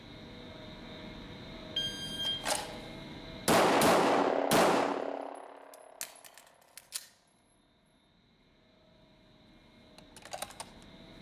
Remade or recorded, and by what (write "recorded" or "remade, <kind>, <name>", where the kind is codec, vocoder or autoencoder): recorded